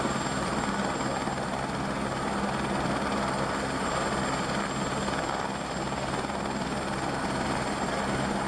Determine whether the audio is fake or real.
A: real